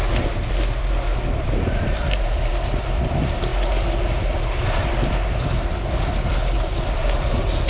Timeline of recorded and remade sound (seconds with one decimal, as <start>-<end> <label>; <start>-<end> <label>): 0.0-7.7 recorded